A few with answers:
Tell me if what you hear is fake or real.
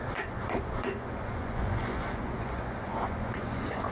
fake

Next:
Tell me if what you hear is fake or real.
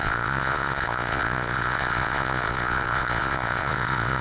fake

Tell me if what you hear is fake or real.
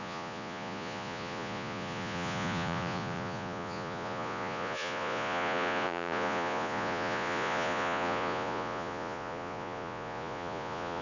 fake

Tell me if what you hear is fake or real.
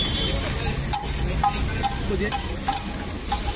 real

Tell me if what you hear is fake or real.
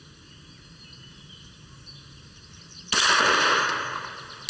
real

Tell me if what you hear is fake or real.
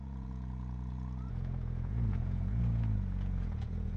fake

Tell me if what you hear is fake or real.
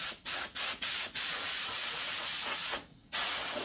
fake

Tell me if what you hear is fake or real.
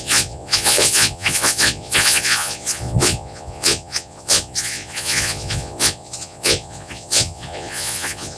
fake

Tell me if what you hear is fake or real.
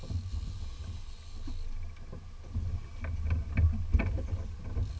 real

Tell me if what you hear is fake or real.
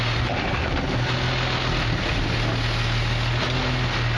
real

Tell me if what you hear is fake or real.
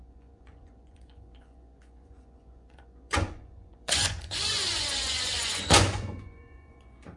fake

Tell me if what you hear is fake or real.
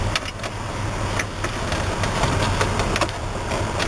real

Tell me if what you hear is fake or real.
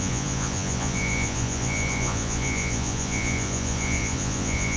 fake